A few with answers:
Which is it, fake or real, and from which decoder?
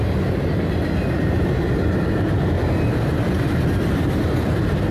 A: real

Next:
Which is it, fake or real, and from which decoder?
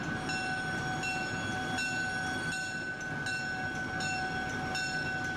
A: real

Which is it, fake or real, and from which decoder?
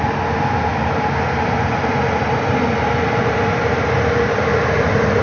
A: real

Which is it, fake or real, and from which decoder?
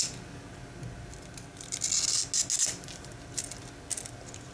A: real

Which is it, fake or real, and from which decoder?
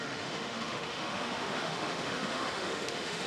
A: fake, autoencoder, DAC-VAE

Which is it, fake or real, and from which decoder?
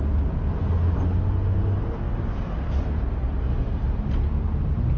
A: real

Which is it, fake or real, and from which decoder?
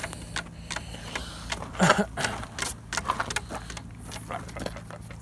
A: real